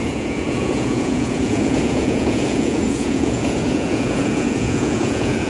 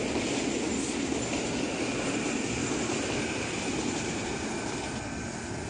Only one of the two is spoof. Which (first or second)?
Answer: first